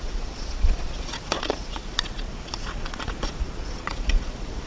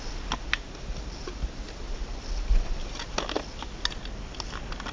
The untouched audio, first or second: second